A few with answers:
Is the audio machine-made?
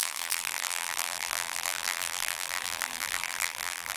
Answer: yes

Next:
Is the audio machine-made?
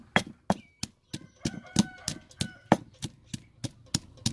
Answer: no